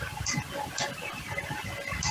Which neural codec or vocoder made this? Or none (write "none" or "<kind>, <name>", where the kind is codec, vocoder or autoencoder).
none